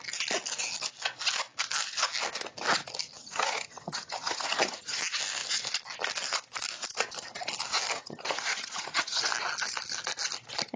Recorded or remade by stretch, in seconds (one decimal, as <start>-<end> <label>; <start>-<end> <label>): 0.0-3.2 recorded; 3.2-5.0 remade; 5.0-7.9 recorded; 7.9-9.2 remade; 9.2-10.8 recorded